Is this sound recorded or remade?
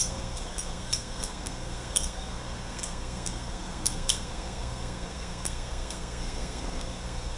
remade